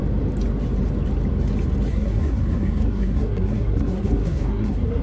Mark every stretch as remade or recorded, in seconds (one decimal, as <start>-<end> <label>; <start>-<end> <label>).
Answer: 0.0-1.9 recorded; 1.9-5.0 remade